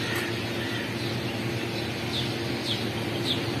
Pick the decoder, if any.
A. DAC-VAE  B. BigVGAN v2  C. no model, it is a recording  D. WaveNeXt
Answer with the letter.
C